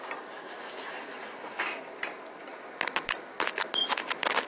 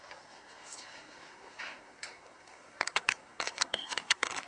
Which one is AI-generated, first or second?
second